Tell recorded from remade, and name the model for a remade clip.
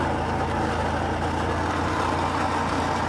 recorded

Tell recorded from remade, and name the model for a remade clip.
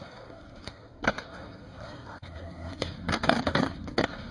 remade, codec, SNAC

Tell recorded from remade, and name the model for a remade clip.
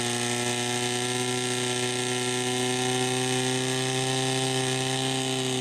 recorded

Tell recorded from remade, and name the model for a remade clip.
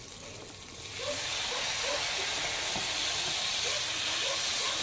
recorded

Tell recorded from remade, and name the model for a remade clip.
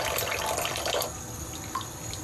recorded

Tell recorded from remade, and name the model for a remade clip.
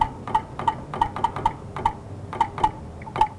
recorded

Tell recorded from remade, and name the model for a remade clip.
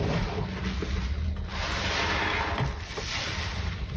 recorded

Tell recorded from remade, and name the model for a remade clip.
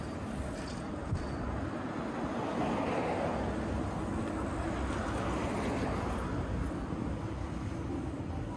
recorded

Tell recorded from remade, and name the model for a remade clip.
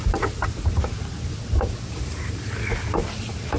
recorded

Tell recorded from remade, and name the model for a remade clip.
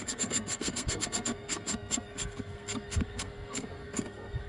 remade, codec, SNAC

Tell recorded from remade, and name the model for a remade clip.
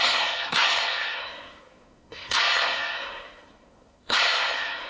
remade, codec, SNAC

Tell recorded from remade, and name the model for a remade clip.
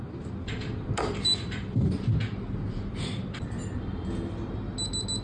recorded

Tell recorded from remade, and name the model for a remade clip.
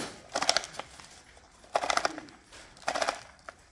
recorded